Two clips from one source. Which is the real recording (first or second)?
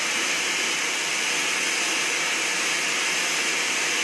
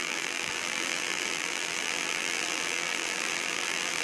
first